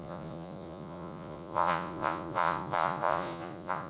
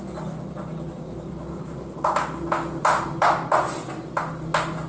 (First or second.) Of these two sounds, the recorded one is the second